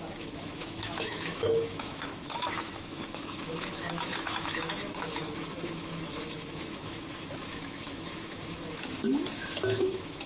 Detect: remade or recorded remade